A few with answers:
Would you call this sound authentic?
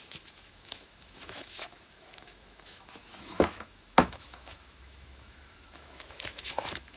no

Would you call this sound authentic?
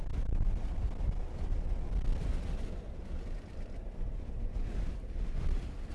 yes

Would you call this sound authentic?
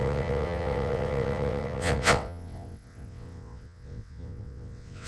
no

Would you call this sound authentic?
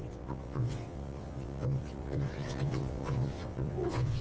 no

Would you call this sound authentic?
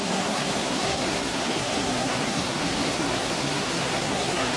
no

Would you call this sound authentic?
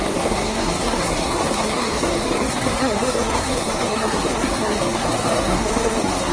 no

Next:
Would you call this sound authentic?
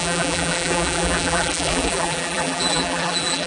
no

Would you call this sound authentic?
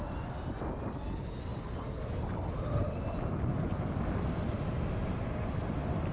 yes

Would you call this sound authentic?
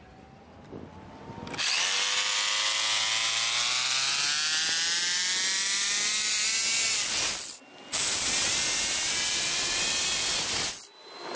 yes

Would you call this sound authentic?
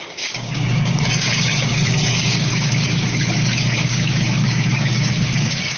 no